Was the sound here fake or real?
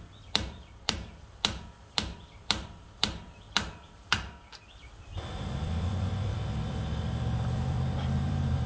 fake